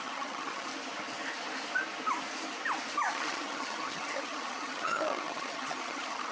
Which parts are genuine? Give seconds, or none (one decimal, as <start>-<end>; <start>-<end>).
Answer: 0.7-3.1